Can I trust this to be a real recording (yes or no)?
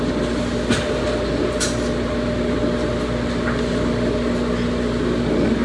yes